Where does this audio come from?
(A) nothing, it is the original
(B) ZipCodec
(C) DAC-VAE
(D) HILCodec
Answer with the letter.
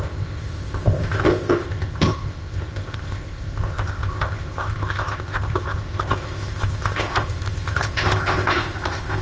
B